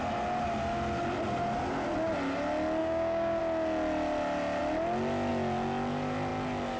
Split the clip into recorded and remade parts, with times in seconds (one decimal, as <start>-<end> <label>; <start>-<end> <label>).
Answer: 0.0-2.8 recorded; 2.8-3.4 remade; 3.4-6.8 recorded